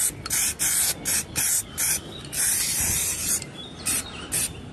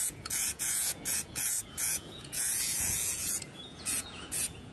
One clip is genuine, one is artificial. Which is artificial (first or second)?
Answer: second